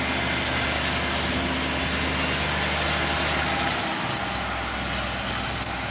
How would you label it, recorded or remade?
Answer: recorded